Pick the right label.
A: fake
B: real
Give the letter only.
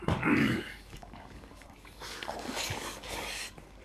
A